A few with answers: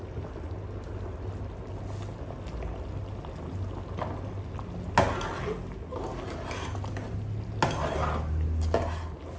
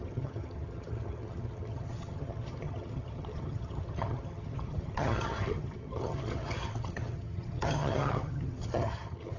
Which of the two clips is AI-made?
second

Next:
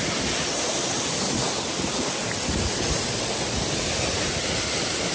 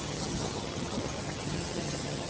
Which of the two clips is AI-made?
second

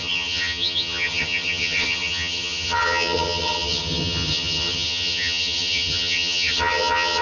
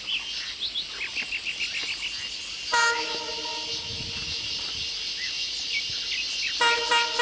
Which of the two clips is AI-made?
first